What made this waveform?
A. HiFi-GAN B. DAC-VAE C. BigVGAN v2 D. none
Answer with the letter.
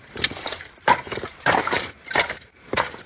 C